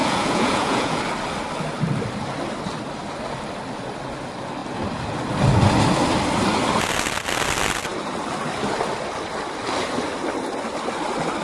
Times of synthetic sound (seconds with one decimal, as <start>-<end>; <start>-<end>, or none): 0.0-1.0